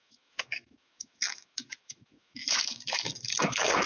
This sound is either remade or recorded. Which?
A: remade